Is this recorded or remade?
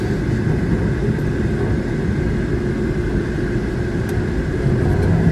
recorded